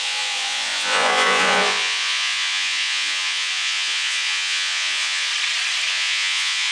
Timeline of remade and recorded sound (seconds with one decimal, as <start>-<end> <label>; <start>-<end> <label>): 0.0-5.3 remade; 5.3-5.9 recorded; 5.9-6.7 remade